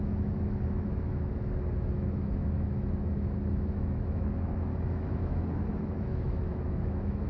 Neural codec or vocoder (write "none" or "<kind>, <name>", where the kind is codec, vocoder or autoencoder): autoencoder, DAC-VAE